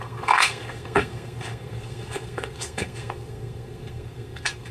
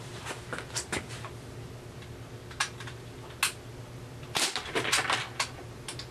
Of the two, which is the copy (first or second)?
first